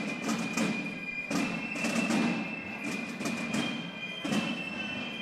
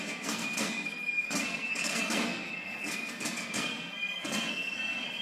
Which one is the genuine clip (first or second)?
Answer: first